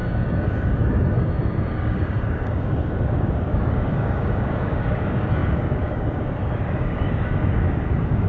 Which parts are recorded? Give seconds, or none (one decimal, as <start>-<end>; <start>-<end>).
none